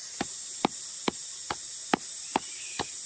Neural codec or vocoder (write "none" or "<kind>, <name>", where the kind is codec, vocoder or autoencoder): none